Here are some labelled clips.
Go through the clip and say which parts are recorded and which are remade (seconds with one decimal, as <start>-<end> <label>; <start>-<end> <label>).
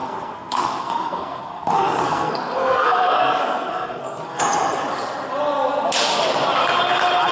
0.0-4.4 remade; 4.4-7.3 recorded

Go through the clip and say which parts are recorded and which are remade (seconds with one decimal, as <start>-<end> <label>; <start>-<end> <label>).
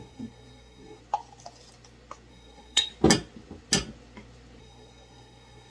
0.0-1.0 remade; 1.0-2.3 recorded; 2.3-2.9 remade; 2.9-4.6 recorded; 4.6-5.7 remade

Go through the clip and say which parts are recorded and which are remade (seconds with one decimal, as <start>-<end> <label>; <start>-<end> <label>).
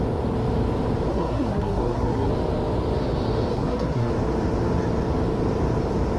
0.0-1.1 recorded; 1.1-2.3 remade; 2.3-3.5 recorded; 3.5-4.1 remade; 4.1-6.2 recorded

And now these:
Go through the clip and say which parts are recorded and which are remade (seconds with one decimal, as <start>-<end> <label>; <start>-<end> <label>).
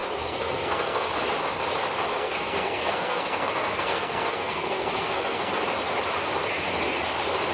0.0-1.1 remade; 1.1-2.1 recorded; 2.1-5.5 remade; 5.5-7.5 recorded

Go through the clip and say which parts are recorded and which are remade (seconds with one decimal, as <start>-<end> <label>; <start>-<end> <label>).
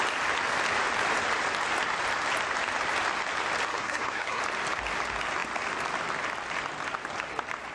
0.0-3.7 recorded; 3.7-4.4 remade; 4.4-7.7 recorded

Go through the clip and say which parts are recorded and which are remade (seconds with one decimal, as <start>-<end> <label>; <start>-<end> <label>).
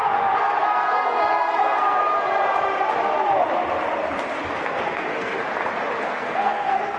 0.0-2.0 remade; 2.0-4.6 recorded; 4.6-5.4 remade; 5.4-6.0 recorded; 6.0-7.0 remade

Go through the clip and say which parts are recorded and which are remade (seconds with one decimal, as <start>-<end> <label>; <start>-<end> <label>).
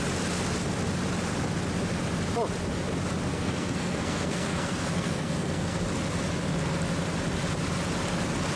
0.0-3.3 recorded; 3.3-5.8 remade; 5.8-8.6 recorded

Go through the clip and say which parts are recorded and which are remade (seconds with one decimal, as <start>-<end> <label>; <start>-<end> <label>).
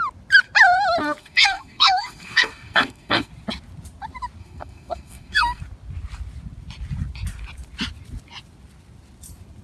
0.0-1.2 recorded; 1.2-3.3 remade; 3.3-4.4 recorded; 4.4-5.6 remade; 5.6-9.6 recorded